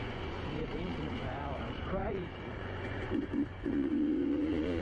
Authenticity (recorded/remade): remade